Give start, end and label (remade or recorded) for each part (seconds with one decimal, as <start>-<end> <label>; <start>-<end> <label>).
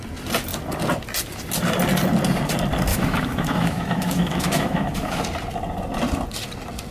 0.0-2.9 recorded; 2.9-5.2 remade; 5.2-6.9 recorded